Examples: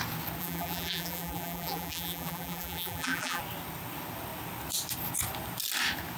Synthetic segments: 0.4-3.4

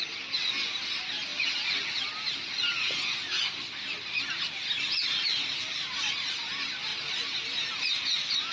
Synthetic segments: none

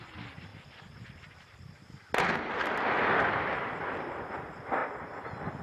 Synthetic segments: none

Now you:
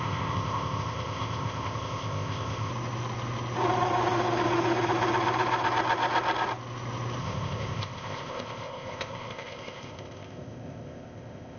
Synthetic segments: 0.0-2.7; 7.2-11.6